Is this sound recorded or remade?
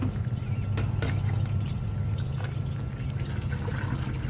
recorded